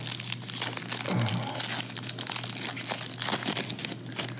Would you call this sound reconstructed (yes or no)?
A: no